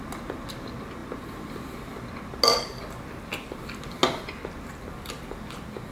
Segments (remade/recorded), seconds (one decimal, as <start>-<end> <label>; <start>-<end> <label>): 0.0-5.9 recorded